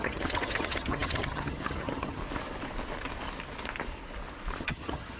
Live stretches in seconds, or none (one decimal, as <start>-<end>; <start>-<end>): 2.2-4.6